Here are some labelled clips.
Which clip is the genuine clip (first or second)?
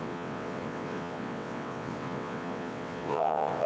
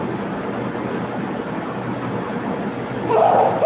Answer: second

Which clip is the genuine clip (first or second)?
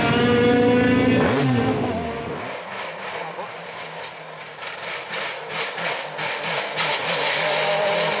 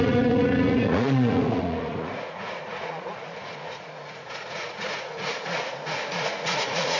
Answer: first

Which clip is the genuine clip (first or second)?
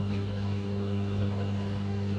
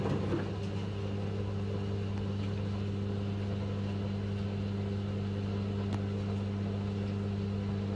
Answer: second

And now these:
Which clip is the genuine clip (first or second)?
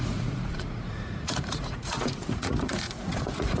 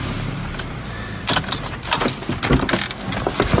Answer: second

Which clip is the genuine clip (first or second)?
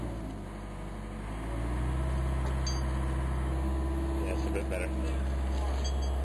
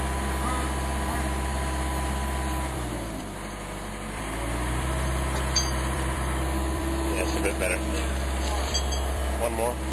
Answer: first